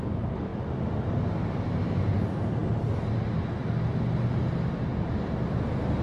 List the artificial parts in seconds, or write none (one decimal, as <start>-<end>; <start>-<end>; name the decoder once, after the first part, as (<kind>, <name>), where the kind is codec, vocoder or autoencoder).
none